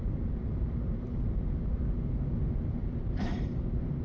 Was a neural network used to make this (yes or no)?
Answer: yes